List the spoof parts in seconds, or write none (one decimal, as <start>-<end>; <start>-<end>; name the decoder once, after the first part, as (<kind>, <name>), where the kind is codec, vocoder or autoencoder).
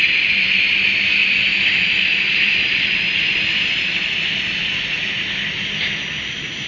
none